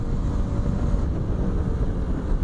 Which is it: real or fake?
real